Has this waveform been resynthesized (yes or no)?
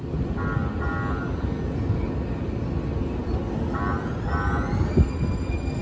no